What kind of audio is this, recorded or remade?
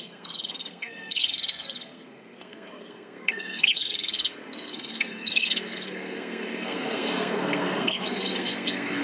remade